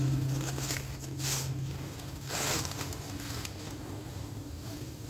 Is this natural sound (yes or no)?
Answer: no